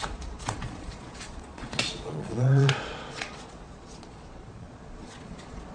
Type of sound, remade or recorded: remade